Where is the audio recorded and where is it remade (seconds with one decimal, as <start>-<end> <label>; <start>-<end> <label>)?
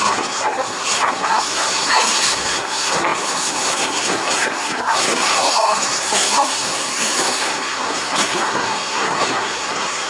0.0-10.1 remade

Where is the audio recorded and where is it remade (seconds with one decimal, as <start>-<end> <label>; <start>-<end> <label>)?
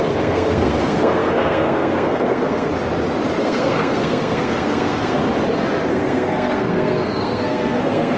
0.0-2.7 remade; 2.7-3.4 recorded; 3.4-5.2 remade; 5.2-5.9 recorded; 5.9-8.2 remade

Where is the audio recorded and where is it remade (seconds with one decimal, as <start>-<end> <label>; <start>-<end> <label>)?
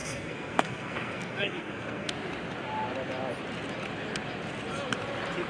0.0-2.1 remade; 2.1-5.5 recorded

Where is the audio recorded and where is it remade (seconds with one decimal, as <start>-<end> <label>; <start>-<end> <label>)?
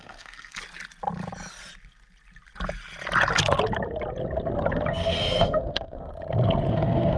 0.0-0.6 remade; 0.6-4.9 recorded; 4.9-6.1 remade; 6.1-6.7 recorded; 6.7-7.2 remade